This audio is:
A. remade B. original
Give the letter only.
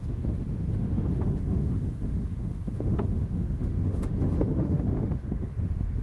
A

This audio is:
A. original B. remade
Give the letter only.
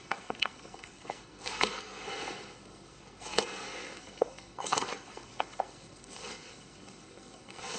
B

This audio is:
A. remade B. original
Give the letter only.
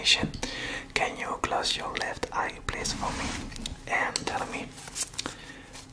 B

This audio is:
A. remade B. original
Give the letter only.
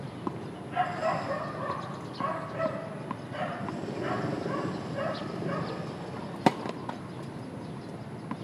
B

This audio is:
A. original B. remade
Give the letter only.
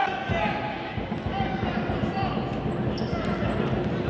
A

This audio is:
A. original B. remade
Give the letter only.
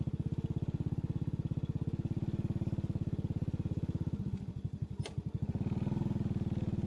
A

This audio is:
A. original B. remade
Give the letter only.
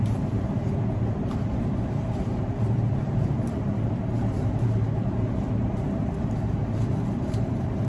B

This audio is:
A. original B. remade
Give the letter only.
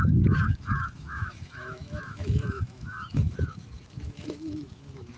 B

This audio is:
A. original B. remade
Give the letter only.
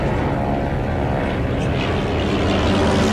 A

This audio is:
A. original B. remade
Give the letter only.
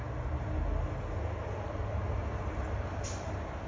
A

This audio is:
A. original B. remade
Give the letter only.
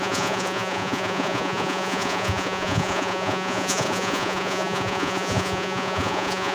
B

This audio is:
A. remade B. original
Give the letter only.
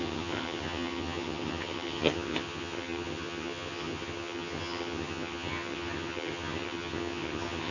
A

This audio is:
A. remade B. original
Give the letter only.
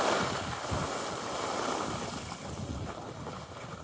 B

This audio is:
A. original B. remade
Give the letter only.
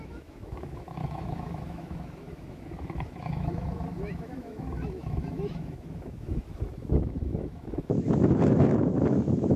B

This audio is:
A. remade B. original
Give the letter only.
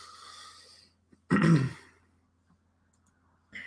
B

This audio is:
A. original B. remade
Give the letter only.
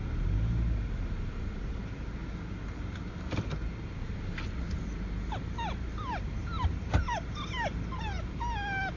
A